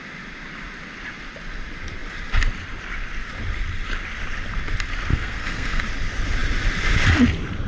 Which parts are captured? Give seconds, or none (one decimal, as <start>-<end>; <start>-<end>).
0.0-5.1; 5.8-7.7